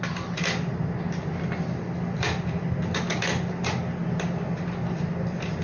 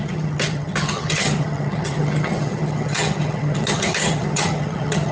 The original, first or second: first